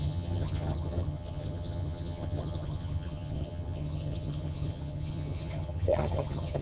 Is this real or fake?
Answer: fake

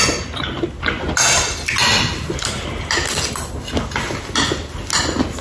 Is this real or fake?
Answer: real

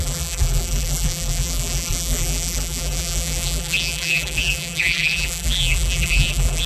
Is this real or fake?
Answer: fake